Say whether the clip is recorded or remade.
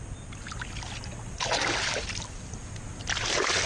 recorded